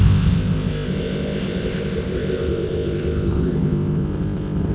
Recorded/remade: remade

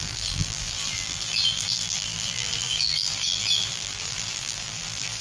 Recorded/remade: remade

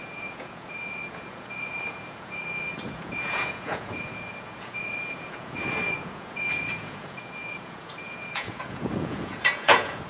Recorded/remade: remade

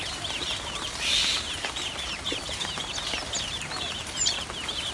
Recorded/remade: remade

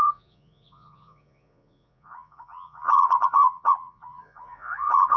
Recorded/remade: remade